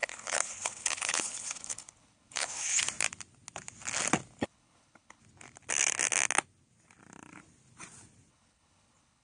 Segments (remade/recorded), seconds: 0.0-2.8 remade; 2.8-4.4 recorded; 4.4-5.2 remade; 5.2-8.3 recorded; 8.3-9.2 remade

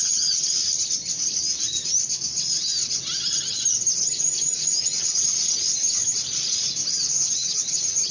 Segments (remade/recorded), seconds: 0.0-0.6 remade; 0.6-3.9 recorded; 3.9-6.0 remade; 6.0-6.9 recorded; 6.9-8.1 remade